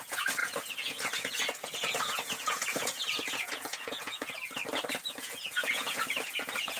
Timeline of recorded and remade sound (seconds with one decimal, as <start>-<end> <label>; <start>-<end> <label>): 0.0-4.6 remade; 4.6-5.1 recorded; 5.1-6.8 remade